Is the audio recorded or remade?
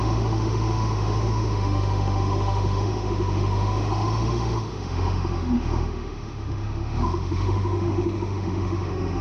remade